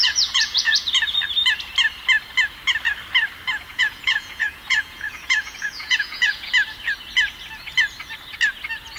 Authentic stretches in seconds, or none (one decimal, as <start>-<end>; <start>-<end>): 0.9-3.7; 6.5-9.0